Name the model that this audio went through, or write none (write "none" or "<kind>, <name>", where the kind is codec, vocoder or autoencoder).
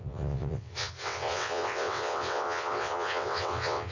vocoder, WaveNeXt